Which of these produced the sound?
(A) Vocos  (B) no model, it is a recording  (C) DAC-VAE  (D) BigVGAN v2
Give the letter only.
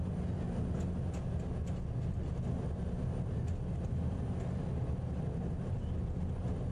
B